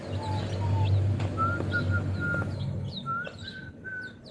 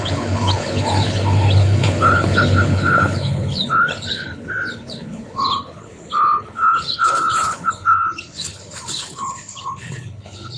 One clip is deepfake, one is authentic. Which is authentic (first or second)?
first